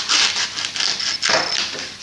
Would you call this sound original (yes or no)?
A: yes